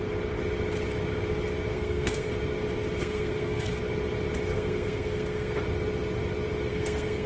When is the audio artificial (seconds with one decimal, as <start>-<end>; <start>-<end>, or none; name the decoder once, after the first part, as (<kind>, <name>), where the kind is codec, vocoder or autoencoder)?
1.7-2.3 (codec, SNAC); 3.0-3.8; 4.5-5.6; 6.7-7.3